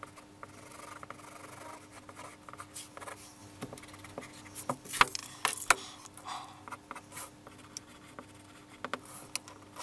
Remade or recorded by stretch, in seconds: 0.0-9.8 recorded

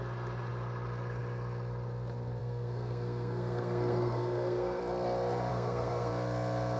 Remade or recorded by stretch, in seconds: 0.0-2.4 recorded; 2.4-4.8 remade; 4.8-5.5 recorded; 5.5-6.1 remade; 6.1-6.8 recorded

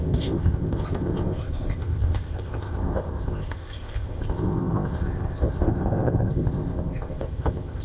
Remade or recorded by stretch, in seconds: 0.0-7.8 remade

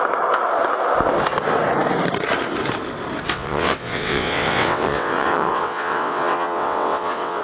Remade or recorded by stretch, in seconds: 0.0-3.3 recorded; 3.3-7.4 remade